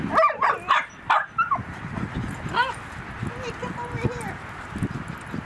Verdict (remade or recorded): recorded